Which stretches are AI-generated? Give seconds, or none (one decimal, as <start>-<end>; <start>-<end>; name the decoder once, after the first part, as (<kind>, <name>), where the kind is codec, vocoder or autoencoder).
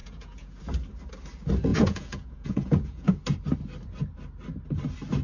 0.0-0.6 (vocoder, Vocos); 1.7-3.2